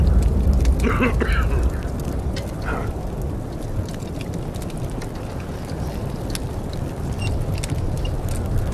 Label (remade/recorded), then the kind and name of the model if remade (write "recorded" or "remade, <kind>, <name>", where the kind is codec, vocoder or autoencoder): recorded